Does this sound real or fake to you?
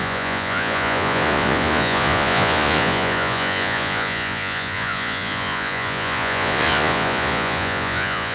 fake